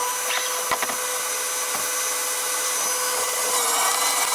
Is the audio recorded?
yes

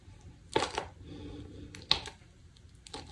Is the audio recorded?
yes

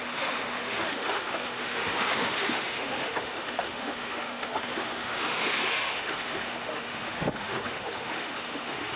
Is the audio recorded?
no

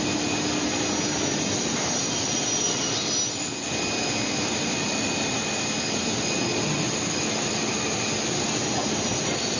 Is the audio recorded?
yes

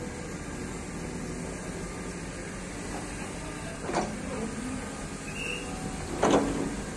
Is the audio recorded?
yes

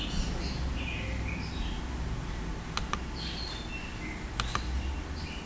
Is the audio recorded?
yes